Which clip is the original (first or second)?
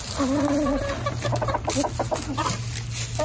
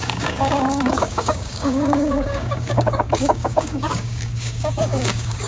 first